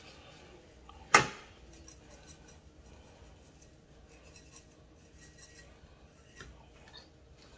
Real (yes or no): yes